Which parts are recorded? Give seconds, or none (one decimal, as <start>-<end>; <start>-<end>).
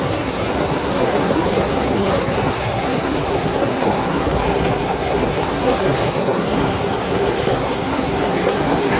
none